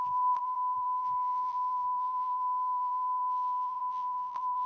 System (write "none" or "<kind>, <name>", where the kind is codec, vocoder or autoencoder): vocoder, BigVGAN v2